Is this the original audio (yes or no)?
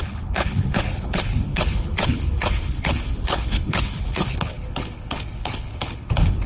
no